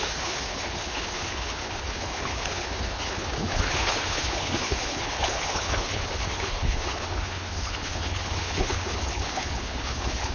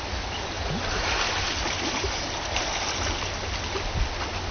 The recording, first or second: second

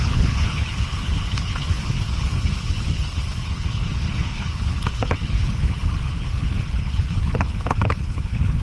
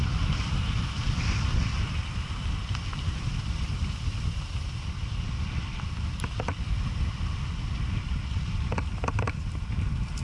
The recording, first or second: second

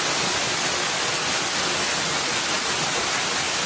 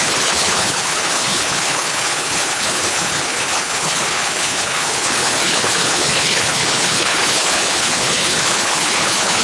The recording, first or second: first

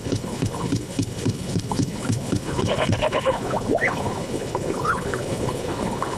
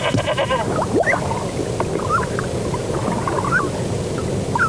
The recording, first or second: second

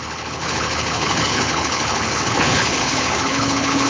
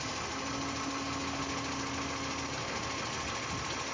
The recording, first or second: second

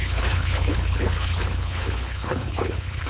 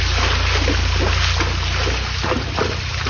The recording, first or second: second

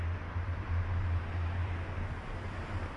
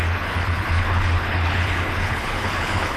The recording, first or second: first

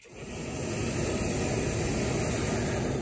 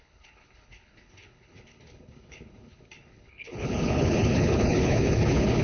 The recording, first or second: first